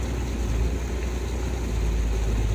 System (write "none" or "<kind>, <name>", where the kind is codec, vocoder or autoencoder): none